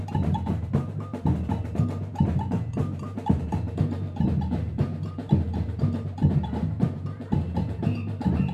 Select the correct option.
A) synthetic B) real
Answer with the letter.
A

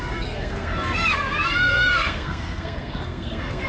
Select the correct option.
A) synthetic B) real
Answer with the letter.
A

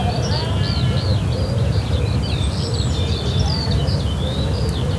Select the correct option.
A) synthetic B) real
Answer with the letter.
B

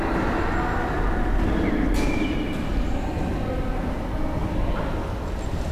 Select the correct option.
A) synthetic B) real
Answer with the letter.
B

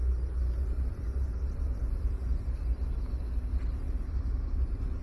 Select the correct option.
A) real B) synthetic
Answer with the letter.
B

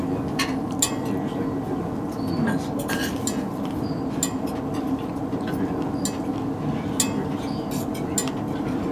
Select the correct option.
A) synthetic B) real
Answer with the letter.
B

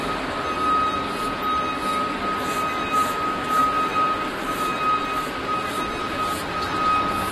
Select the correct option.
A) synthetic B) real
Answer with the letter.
B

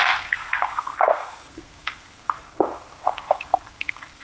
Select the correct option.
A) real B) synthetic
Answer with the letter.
B